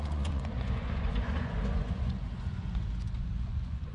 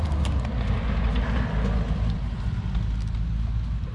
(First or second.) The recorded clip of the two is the second